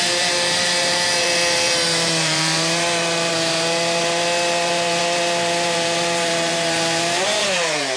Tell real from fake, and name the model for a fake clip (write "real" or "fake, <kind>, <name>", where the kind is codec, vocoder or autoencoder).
fake, vocoder, BigVGAN v2